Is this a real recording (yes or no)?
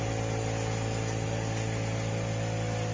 yes